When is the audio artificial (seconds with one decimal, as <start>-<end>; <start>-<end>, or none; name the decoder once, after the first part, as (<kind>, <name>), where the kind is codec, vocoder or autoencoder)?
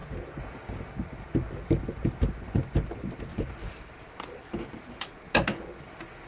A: 3.3-5.1 (vocoder, BigVGAN v2)